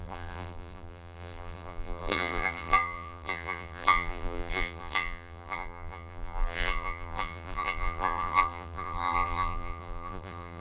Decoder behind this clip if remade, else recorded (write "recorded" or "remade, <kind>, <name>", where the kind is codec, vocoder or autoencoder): remade, vocoder, BigVGAN v2